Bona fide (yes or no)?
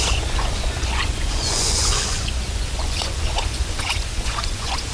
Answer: no